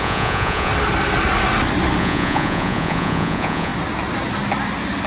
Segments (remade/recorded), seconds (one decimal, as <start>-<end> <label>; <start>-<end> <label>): 0.0-0.7 remade; 0.7-2.0 recorded; 2.0-3.7 remade; 3.7-5.1 recorded